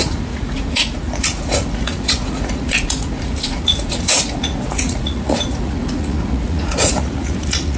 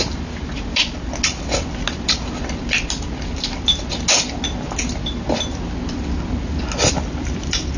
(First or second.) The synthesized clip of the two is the first